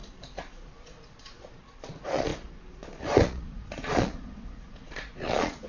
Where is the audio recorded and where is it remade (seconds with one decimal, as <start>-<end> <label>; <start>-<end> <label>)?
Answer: 0.0-5.7 remade